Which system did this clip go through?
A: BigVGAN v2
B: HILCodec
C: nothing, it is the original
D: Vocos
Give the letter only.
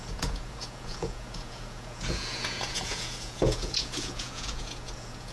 D